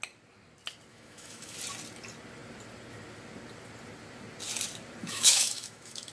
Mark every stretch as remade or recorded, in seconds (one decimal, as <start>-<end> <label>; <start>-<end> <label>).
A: 0.0-0.9 recorded; 0.9-1.6 remade; 1.6-5.0 recorded; 5.0-6.1 remade

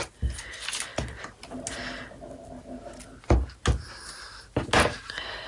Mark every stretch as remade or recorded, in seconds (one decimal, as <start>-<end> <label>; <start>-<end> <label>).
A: 0.0-5.5 recorded

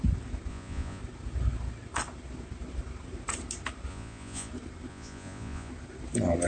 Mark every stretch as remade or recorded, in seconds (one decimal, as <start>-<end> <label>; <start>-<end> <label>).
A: 0.0-0.5 recorded; 0.5-1.0 remade; 1.0-3.9 recorded; 3.9-4.5 remade; 4.5-4.9 recorded; 4.9-5.7 remade; 5.7-6.5 recorded

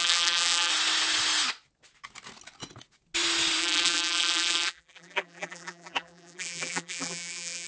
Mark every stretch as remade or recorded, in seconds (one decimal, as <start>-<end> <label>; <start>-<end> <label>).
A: 0.0-0.7 remade; 0.7-3.6 recorded; 3.6-7.7 remade